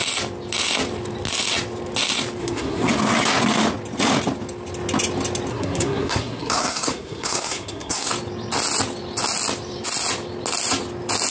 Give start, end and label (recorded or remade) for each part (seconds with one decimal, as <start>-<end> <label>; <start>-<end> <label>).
0.0-2.4 recorded; 2.4-2.9 remade; 2.9-5.5 recorded; 5.5-8.1 remade; 8.1-11.3 recorded